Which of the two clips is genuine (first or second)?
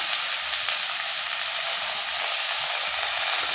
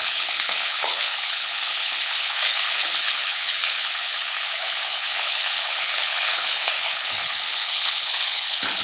first